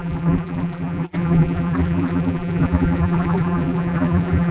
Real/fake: fake